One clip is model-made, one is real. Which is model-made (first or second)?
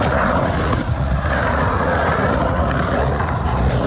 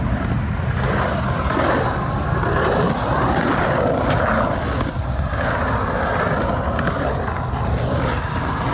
first